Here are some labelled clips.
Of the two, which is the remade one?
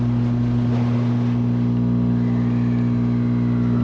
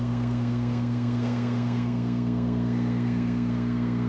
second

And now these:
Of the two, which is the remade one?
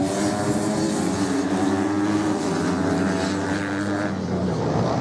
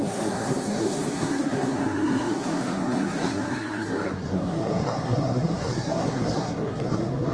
second